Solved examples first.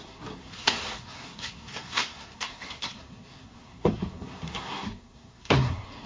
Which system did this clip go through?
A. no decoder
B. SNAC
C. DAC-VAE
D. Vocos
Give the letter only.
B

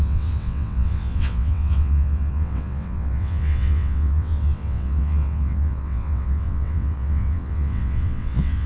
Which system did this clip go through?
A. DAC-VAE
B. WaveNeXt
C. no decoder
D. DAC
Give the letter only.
B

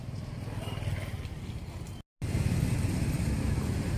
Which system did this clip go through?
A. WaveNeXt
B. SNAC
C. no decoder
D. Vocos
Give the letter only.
C